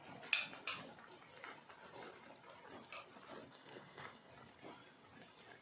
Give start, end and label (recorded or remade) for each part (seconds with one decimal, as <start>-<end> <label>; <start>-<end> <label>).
0.0-3.5 recorded; 3.5-4.3 remade; 4.3-5.6 recorded